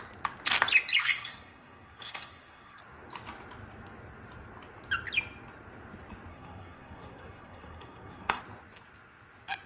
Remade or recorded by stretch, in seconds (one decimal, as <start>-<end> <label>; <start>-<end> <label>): 0.0-1.0 recorded; 1.0-2.8 remade; 2.8-6.3 recorded; 6.3-8.4 remade; 8.4-9.7 recorded